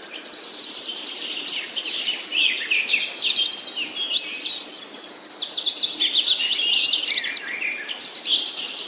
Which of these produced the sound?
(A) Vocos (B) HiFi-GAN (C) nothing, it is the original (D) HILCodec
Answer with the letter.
C